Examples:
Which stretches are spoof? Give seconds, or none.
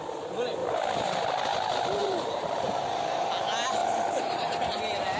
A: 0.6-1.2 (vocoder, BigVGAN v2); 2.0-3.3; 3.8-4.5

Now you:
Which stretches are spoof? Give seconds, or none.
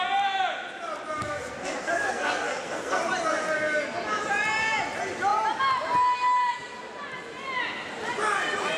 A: 1.2-3.0 (codec, SNAC)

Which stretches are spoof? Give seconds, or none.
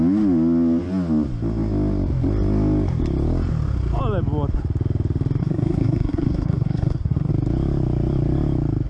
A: 5.4-7.3 (codec, SNAC)